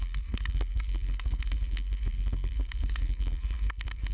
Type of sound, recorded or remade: remade